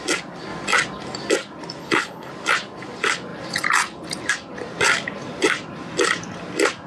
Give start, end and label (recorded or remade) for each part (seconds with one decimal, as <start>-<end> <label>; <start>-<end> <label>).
0.0-1.8 recorded; 1.8-2.3 remade; 2.3-6.9 recorded

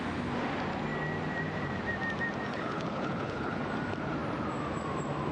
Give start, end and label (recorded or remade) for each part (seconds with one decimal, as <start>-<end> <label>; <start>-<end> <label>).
0.0-2.5 recorded; 2.5-3.6 remade; 3.6-5.3 recorded

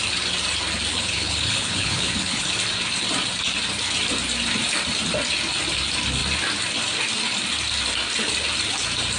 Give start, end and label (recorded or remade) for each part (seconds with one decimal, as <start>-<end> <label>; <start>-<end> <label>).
0.0-0.9 recorded; 0.9-2.5 remade; 2.5-9.2 recorded